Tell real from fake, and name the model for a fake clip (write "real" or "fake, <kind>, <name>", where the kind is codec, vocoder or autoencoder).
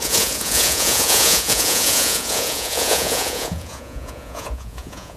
fake, vocoder, Vocos